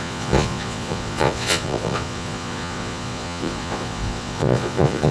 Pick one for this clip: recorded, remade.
remade